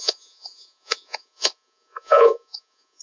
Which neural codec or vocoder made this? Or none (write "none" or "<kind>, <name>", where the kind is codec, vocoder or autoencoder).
vocoder, Vocos